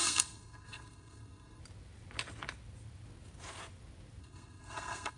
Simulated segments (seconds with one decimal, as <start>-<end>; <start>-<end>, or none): 0.0-1.6; 4.2-5.2